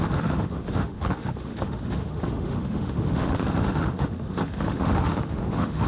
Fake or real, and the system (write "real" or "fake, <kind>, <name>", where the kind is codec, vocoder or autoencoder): fake, autoencoder, DAC-VAE